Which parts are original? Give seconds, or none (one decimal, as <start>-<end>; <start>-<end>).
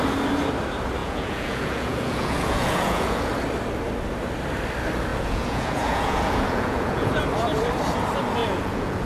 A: 0.0-1.0; 3.3-5.1; 7.2-8.4